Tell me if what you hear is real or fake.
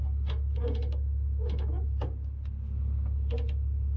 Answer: real